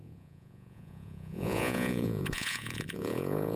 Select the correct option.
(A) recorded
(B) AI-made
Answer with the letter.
B